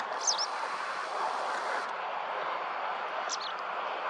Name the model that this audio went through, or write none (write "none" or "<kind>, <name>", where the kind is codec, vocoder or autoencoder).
none